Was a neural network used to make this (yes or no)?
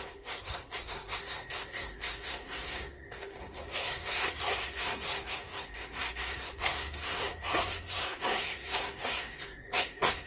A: yes